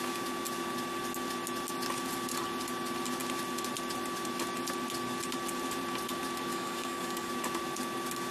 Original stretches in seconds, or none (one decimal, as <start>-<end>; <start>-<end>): 0.0-6.5; 7.3-8.3